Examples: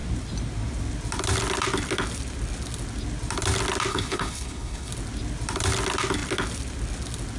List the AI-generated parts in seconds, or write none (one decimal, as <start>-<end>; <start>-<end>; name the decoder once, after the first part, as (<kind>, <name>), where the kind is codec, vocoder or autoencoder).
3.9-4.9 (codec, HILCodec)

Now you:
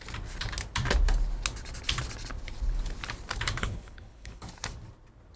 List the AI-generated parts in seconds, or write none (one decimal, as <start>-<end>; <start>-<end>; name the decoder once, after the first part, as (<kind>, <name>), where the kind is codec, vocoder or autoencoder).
3.6-4.4 (codec, HILCodec)

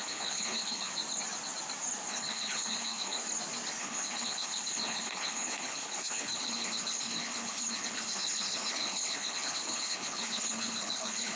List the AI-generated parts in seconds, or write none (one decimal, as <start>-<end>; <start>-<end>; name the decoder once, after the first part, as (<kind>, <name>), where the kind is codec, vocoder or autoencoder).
0.0-0.9 (codec, HILCodec); 2.1-3.2; 3.8-11.4

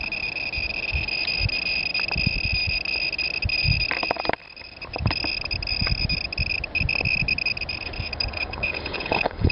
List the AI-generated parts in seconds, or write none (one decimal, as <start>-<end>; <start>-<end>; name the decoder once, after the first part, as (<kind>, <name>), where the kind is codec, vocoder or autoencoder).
8.1-9.5 (codec, HILCodec)